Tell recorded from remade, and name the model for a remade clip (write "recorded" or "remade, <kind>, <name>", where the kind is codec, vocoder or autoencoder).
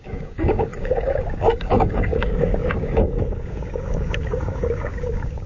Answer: remade, codec, DAC